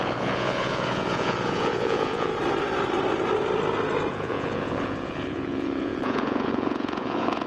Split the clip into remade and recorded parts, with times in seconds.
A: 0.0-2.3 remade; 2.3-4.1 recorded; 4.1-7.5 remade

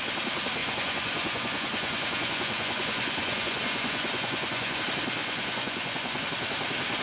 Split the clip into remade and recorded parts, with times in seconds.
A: 0.0-0.6 recorded; 0.6-4.8 remade; 4.8-5.2 recorded; 5.2-6.2 remade; 6.2-7.0 recorded